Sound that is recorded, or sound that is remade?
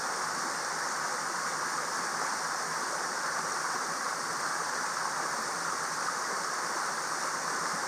recorded